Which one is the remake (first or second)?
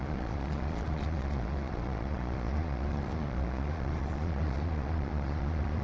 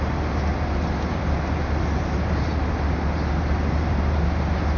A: first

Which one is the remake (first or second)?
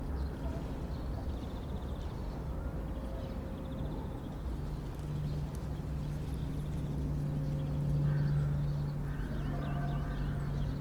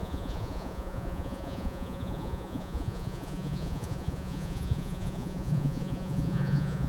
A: second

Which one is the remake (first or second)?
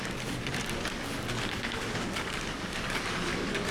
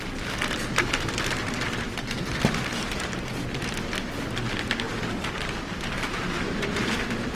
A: first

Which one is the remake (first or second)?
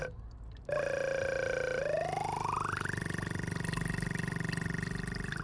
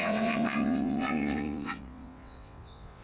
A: second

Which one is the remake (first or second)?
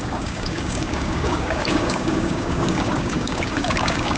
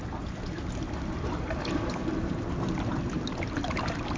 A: first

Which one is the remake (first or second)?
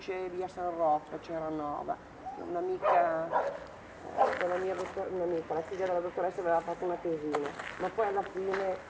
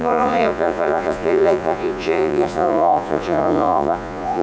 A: second